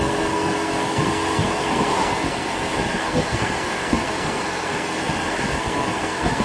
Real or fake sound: fake